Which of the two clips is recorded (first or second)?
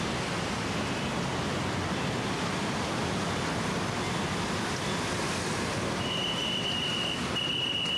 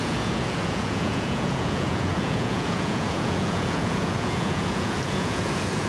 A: first